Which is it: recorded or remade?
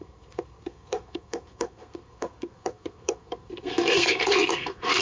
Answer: remade